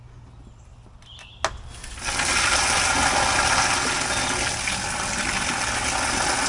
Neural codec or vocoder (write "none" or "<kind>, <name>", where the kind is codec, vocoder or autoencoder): none